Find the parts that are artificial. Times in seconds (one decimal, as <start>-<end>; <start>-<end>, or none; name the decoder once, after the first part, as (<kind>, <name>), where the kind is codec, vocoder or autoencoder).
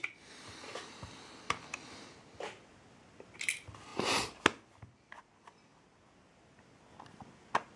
none